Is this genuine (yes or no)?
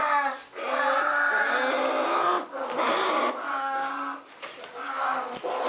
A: yes